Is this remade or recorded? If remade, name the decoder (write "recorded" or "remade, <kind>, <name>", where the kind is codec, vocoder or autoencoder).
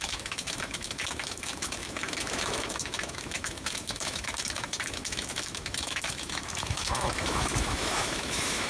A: remade, autoencoder, DAC-VAE